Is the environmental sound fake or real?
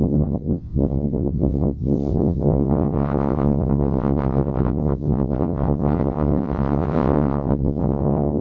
fake